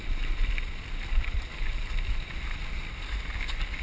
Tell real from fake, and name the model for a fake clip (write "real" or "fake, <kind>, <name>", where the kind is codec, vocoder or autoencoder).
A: real